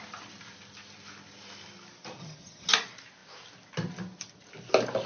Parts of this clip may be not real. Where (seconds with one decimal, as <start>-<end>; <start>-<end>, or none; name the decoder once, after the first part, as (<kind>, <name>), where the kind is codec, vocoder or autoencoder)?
2.2-2.7 (vocoder, HiFi-GAN)